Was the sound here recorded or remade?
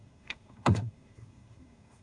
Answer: remade